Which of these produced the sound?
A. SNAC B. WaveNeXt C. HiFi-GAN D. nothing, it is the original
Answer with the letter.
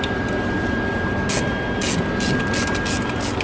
D